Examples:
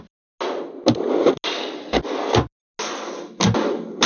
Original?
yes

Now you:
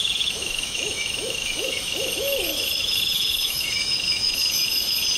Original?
no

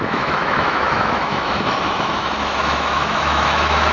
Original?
no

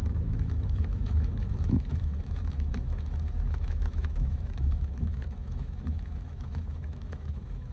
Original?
no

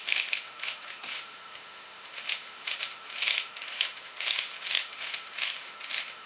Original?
no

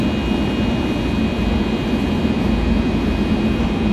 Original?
yes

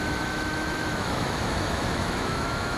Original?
no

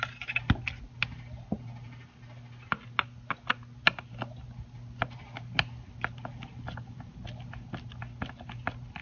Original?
yes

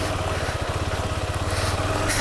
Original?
yes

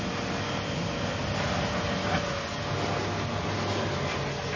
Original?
yes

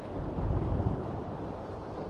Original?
yes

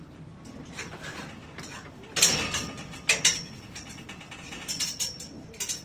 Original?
yes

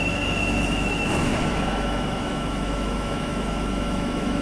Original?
no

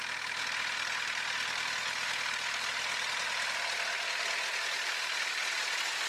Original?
yes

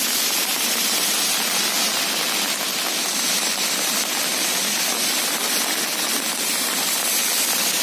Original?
yes